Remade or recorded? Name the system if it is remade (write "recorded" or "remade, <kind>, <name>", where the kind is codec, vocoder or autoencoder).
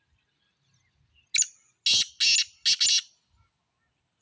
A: recorded